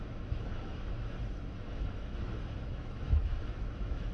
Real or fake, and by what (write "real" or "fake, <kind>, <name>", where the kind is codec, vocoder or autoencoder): fake, autoencoder, DAC-VAE